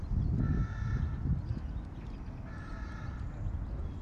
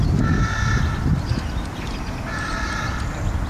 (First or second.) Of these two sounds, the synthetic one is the second